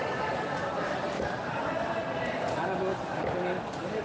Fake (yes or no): yes